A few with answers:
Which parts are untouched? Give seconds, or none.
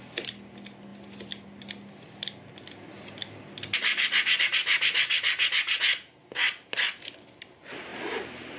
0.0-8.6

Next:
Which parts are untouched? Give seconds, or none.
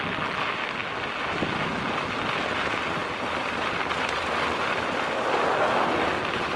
0.0-3.0; 6.1-6.6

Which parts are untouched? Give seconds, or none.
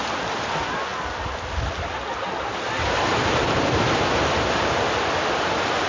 0.0-5.9